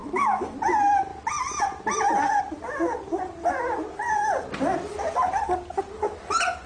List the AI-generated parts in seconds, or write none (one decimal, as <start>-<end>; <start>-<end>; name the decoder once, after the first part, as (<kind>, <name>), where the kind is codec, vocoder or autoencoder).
0.0-0.5 (autoencoder, DAC-VAE)